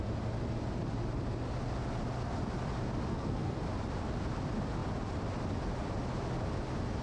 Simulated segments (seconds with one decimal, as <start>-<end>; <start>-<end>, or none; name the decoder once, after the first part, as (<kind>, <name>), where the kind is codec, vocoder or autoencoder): 3.1-3.6 (codec, SNAC)